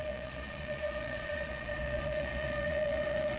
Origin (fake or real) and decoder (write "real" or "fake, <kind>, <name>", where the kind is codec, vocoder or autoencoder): fake, vocoder, Vocos